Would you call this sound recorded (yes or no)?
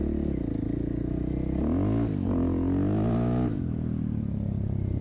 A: yes